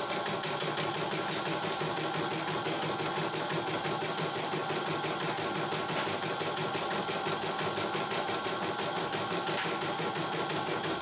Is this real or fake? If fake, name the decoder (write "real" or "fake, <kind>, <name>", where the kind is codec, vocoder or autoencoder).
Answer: real